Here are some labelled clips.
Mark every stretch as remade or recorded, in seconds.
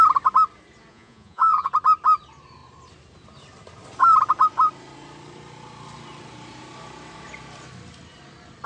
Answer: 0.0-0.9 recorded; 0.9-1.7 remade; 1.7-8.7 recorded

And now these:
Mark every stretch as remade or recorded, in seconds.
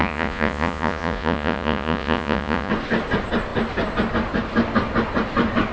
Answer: 0.0-2.7 remade; 2.7-5.7 recorded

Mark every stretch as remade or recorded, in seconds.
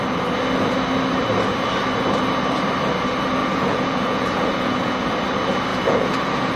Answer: 0.0-3.4 recorded; 3.4-5.1 remade; 5.1-5.7 recorded; 5.7-6.6 remade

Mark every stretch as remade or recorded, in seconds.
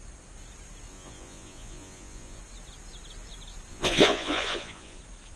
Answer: 0.0-0.9 recorded; 0.9-2.4 remade; 2.4-3.7 recorded; 3.7-5.0 remade; 5.0-5.4 recorded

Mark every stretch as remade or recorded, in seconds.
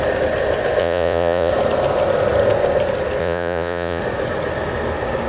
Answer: 0.0-0.8 recorded; 0.8-1.5 remade; 1.5-3.2 recorded; 3.2-4.0 remade; 4.0-5.3 recorded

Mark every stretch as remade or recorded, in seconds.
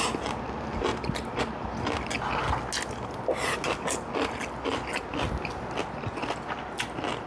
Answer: 0.0-7.3 recorded